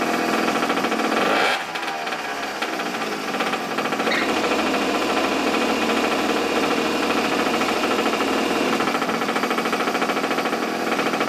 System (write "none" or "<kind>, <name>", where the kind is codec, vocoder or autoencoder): vocoder, BigVGAN v2